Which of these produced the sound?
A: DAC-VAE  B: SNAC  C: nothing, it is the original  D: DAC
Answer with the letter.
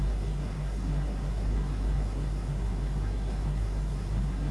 B